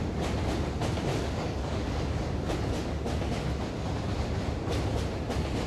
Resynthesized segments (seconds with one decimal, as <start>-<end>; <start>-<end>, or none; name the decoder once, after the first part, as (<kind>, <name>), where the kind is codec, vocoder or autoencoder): 1.1-2.5 (codec, DAC)